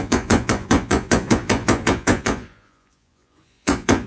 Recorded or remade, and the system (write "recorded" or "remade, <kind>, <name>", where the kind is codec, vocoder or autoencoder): remade, vocoder, Vocos